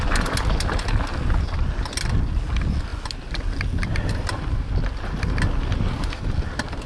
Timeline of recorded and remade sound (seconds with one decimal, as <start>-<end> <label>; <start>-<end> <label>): 0.0-6.9 recorded